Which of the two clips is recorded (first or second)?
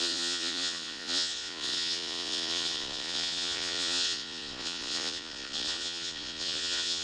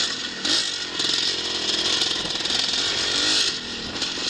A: second